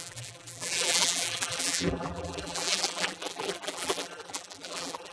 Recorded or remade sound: remade